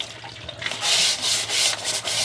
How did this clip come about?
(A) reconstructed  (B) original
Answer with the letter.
B